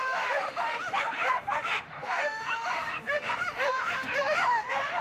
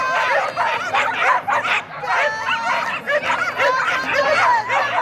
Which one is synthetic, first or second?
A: first